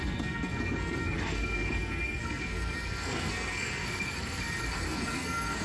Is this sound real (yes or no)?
no